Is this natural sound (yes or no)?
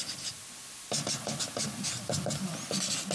yes